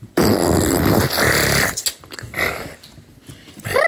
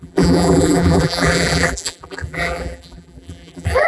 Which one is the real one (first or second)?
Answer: first